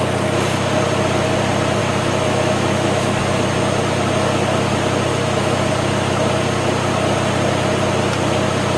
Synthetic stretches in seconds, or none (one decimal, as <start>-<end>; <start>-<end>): 1.8-3.2; 5.1-5.7